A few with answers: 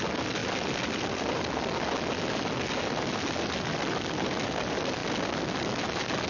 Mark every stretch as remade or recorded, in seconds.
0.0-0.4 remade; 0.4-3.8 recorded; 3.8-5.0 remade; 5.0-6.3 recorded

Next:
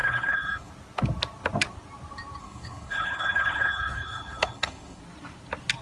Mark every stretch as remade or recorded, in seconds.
0.0-0.7 remade; 0.7-2.4 recorded; 2.4-5.0 remade; 5.0-5.8 recorded

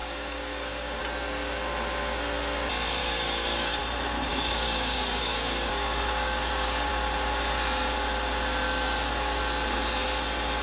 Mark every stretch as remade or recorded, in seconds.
0.0-1.0 remade; 1.0-3.0 recorded; 3.0-3.8 remade; 3.8-4.3 recorded; 4.3-6.9 remade; 6.9-10.6 recorded

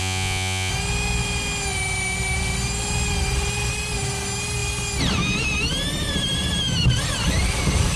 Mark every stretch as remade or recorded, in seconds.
0.0-0.7 remade; 0.7-8.0 recorded

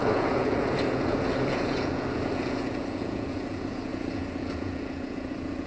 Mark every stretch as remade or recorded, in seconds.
0.0-5.7 remade

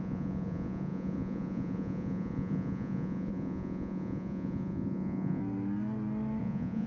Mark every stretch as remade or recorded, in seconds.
0.0-5.4 remade; 5.4-6.4 recorded; 6.4-6.9 remade

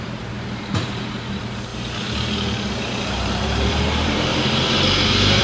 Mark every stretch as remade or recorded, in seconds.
0.0-1.7 remade; 1.7-2.8 recorded; 2.8-4.3 remade; 4.3-5.4 recorded

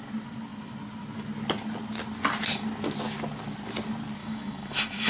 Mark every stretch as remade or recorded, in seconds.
0.0-4.2 recorded; 4.2-5.1 remade